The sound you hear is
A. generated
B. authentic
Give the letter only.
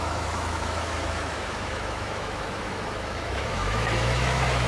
A